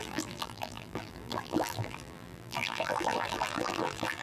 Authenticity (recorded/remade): remade